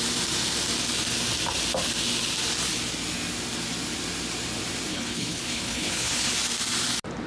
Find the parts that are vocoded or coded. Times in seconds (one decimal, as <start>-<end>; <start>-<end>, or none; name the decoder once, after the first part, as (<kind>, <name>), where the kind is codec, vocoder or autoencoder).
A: 4.9-6.3 (codec, HILCodec)